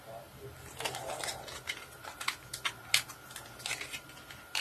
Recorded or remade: recorded